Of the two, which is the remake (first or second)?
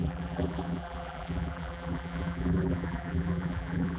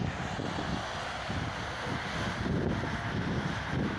first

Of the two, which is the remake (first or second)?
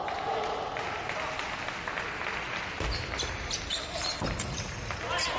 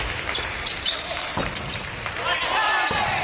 second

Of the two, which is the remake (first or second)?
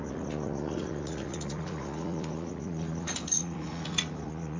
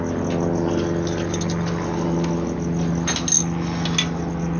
first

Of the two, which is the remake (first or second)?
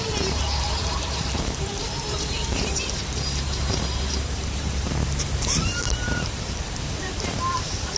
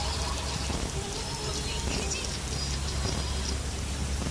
first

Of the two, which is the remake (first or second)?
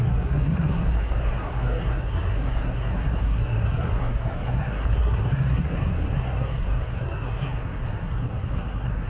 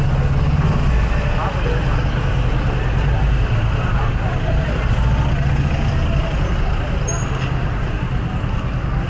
first